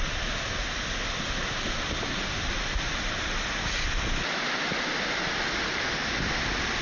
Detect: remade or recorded recorded